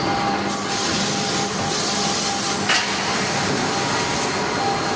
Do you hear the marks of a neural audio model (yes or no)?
no